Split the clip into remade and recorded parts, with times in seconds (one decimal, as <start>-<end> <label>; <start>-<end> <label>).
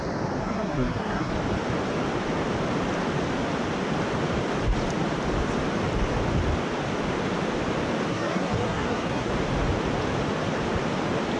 0.0-0.4 recorded; 0.4-1.3 remade; 1.3-8.1 recorded; 8.1-9.3 remade; 9.3-11.4 recorded